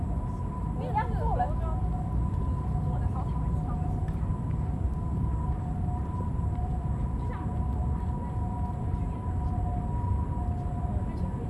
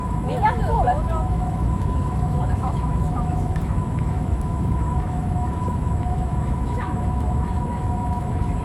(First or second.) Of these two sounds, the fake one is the second